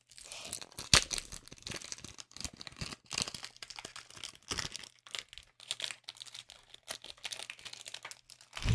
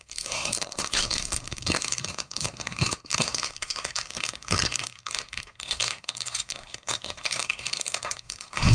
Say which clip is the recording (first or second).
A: first